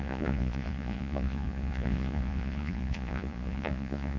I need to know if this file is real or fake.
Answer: fake